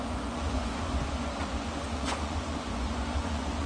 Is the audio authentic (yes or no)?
no